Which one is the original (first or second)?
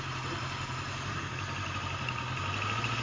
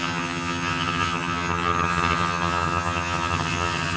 first